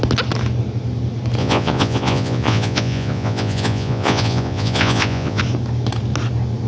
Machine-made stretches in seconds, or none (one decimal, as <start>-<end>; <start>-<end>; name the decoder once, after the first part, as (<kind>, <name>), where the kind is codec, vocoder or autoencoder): 1.4-5.4 (vocoder, Vocos)